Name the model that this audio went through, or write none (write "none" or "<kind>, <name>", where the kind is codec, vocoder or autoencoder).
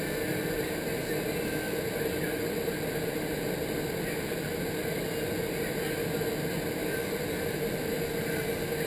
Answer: none